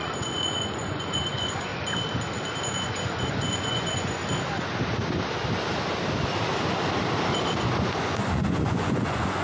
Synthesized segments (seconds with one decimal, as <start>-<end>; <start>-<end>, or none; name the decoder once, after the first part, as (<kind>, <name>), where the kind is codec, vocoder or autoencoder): 0.0-1.7 (vocoder, Vocos); 2.6-4.2; 7.6-9.4